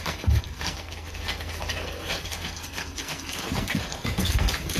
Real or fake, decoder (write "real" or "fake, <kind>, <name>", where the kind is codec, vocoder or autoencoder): fake, codec, SNAC